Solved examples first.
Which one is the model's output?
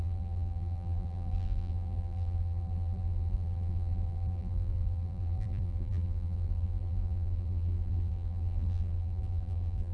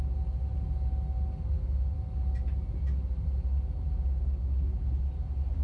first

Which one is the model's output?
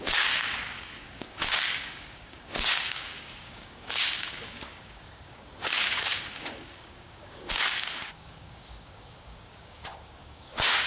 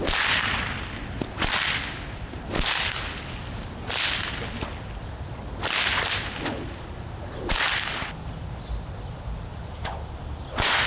first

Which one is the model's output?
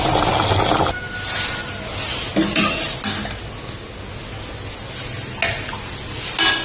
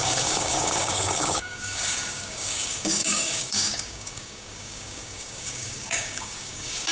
second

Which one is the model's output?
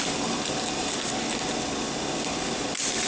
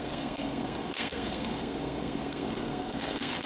second